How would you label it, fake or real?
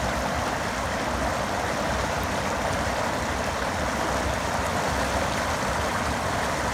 real